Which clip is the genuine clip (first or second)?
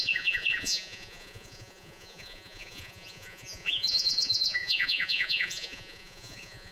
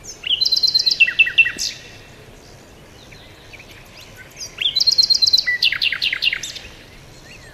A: second